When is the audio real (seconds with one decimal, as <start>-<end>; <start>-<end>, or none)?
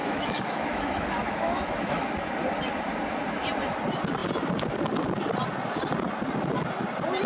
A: 2.1-7.3